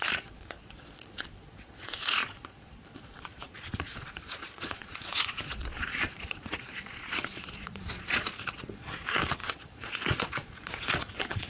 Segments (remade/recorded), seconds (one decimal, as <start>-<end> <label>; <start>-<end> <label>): 0.0-11.5 remade